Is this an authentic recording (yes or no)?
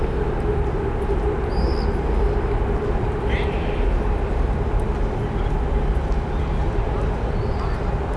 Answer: yes